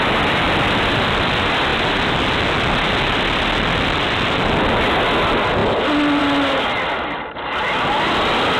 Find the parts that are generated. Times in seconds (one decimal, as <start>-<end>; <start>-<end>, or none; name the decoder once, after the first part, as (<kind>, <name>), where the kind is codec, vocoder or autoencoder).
none